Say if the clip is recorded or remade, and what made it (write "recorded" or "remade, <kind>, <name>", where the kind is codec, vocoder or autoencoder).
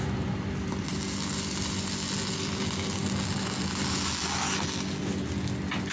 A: recorded